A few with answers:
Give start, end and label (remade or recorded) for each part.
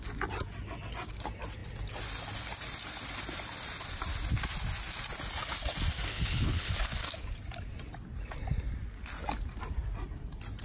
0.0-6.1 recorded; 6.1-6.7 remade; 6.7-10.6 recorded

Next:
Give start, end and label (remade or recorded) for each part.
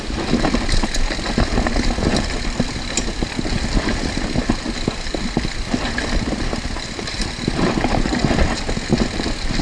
0.0-9.6 recorded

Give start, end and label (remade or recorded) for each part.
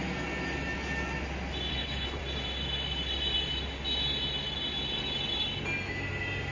0.0-1.7 recorded; 1.7-2.2 remade; 2.2-6.5 recorded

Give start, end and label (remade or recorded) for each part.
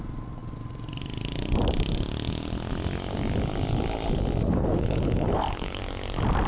0.0-4.5 recorded; 4.5-5.8 remade; 5.8-6.5 recorded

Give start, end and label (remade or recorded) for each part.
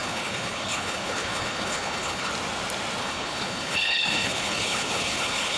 0.0-2.3 remade; 2.3-3.0 recorded; 3.0-5.6 remade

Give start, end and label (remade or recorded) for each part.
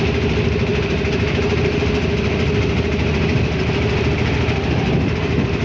0.0-5.6 recorded